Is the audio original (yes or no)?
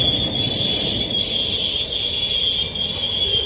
yes